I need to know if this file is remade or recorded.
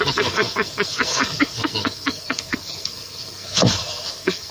remade